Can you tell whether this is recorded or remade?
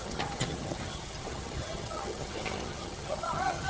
remade